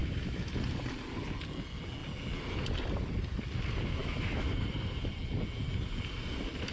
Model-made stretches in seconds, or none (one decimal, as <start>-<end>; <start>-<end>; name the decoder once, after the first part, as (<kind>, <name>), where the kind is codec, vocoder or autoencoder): 0.0-0.5 (autoencoder, DAC-VAE); 4.0-4.5

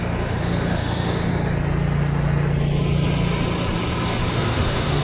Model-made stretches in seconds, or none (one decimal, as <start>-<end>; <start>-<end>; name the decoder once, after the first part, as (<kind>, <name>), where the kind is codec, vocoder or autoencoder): 0.0-1.3 (autoencoder, DAC-VAE); 4.3-5.0

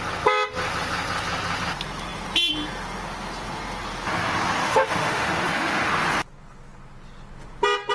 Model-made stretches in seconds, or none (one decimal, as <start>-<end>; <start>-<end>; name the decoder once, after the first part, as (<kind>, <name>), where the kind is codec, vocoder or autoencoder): 4.6-5.9 (autoencoder, DAC-VAE)

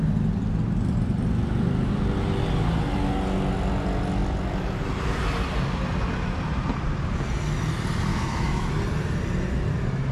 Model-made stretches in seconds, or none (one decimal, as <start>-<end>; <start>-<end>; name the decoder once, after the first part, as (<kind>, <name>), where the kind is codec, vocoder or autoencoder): 8.1-8.7 (autoencoder, DAC-VAE)